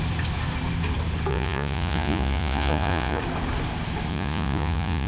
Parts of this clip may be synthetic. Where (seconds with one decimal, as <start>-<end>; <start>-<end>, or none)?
1.3-3.2; 4.1-5.1